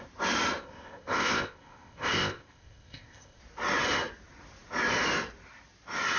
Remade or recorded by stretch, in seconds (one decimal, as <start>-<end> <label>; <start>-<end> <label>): 0.0-0.6 recorded; 0.6-3.4 remade; 3.4-6.2 recorded